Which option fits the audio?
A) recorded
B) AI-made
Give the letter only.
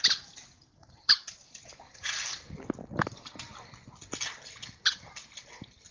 A